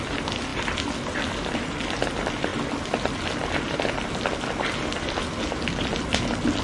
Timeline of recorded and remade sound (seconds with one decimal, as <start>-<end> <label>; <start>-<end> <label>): 0.0-6.6 recorded